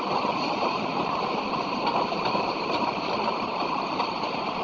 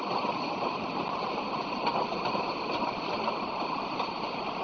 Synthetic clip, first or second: first